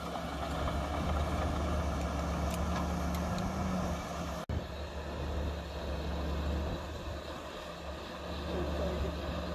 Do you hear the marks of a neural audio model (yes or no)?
no